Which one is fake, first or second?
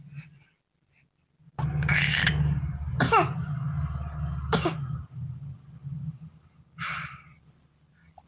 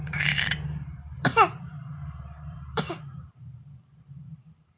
second